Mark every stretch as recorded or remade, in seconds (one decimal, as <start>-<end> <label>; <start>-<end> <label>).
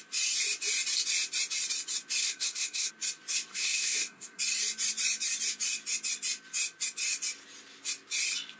0.0-2.2 recorded; 2.2-2.9 remade; 2.9-3.5 recorded; 3.5-4.4 remade; 4.4-8.6 recorded